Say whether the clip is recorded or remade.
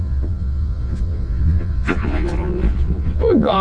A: remade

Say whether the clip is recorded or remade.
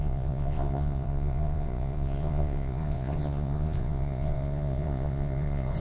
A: remade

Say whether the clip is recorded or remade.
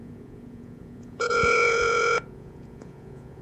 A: remade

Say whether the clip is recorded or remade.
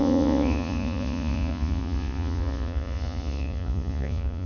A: remade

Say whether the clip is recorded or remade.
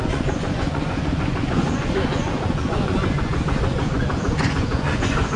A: remade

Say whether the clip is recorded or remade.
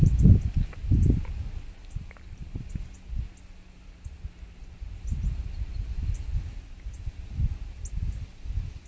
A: recorded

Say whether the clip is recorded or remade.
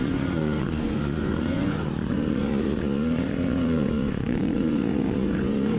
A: remade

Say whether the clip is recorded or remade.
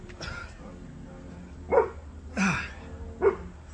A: recorded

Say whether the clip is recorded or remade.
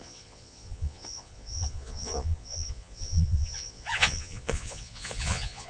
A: remade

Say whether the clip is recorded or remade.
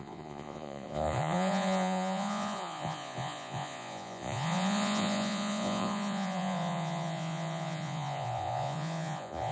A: remade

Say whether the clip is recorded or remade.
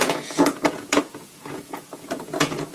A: remade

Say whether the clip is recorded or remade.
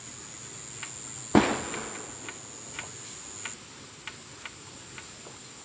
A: recorded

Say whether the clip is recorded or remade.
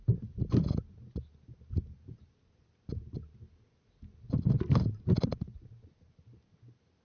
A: recorded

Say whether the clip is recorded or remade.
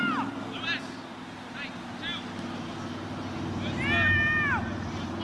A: recorded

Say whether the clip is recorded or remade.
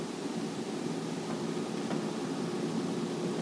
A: recorded